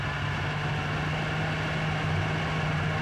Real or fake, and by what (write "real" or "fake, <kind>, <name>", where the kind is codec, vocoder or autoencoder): real